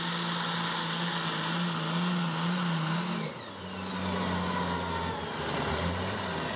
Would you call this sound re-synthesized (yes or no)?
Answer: no